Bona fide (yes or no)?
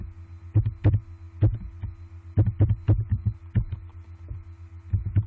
yes